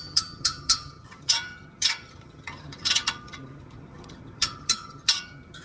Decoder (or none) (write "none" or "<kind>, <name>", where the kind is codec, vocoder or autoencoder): vocoder, HiFi-GAN